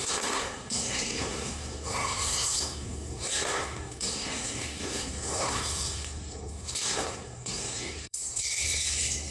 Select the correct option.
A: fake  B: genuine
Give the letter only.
A